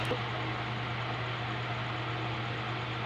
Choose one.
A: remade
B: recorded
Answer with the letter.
B